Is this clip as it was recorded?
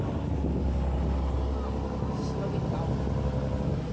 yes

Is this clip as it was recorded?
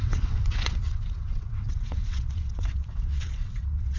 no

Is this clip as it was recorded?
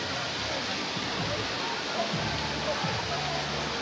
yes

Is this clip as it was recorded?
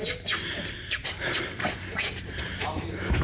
yes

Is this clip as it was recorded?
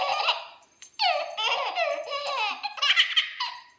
yes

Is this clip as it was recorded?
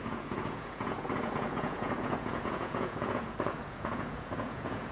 no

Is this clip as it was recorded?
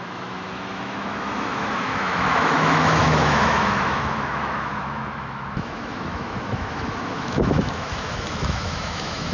no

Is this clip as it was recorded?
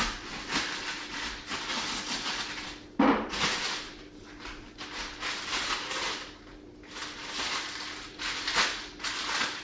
yes